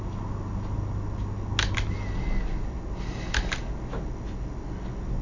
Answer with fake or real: real